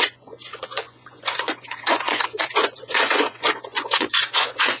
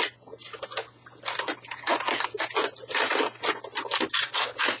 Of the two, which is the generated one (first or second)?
first